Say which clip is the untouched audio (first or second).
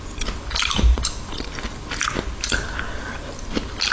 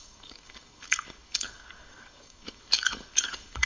first